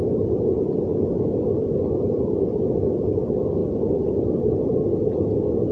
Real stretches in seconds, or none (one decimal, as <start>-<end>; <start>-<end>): 0.9-2.9; 3.6-4.2